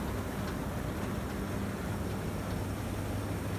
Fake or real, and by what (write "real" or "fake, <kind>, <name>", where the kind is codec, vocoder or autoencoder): real